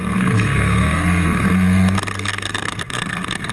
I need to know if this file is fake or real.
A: fake